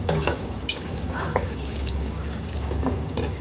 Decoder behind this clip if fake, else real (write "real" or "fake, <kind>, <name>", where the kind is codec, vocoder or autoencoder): fake, codec, DAC